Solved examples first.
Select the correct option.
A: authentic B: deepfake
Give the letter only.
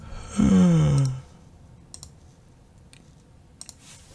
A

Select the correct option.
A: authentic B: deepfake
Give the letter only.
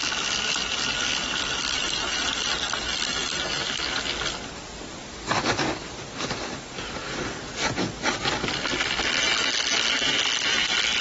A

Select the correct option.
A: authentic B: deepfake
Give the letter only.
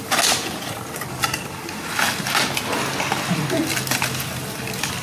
A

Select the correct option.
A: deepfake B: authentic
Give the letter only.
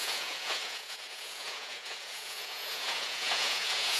A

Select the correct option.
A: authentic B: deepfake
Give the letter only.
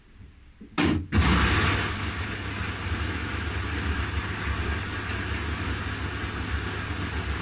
A